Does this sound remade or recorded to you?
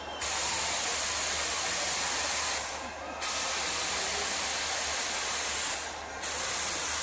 recorded